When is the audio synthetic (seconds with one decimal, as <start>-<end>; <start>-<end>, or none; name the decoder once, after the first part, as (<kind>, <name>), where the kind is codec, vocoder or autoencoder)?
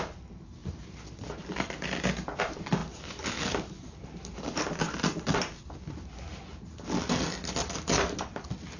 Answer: none